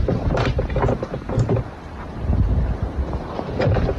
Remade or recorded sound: recorded